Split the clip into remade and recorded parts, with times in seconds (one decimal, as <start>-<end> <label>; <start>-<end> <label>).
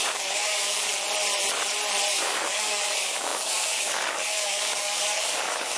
0.0-0.9 remade; 0.9-2.1 recorded; 2.1-5.8 remade